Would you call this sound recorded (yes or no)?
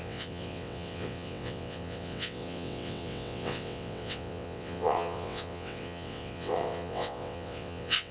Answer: no